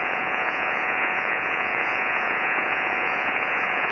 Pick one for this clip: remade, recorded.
remade